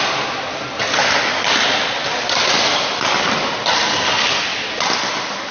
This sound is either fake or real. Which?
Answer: real